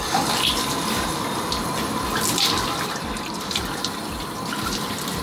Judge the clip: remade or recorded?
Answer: recorded